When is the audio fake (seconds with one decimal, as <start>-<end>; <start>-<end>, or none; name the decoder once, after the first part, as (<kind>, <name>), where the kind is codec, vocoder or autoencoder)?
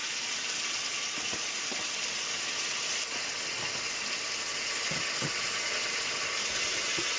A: none